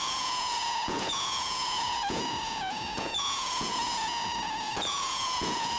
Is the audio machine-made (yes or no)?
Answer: yes